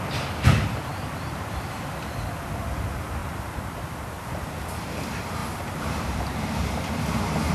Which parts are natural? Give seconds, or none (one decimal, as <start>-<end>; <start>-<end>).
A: 0.0-0.9; 1.5-5.4; 6.6-7.5